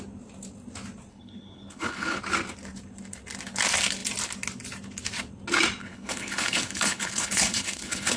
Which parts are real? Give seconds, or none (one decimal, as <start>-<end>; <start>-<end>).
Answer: 0.0-1.1; 2.2-5.8

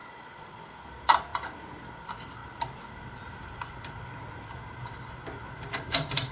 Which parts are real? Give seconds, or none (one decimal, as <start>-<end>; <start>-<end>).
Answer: 0.6-6.3

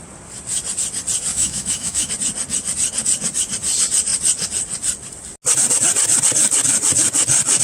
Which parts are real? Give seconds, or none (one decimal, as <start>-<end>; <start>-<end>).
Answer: 0.0-1.3; 2.1-7.6

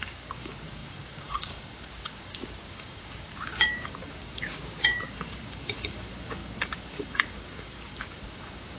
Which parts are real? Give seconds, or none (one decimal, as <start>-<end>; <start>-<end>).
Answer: none

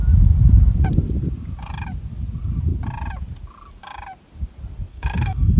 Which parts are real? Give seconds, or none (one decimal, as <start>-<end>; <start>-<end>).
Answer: 0.0-4.9

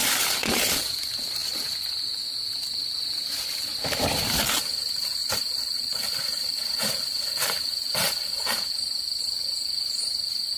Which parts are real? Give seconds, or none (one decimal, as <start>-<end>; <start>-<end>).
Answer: 1.4-3.4

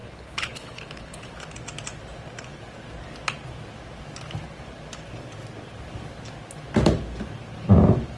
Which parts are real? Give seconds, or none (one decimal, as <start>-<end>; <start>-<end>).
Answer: 1.3-8.2

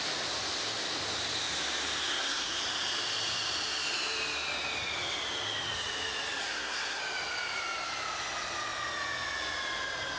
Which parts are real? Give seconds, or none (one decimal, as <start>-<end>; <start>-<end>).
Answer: 0.0-2.0; 2.6-6.4; 7.0-10.2